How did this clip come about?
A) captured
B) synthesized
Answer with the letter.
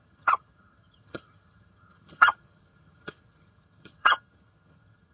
B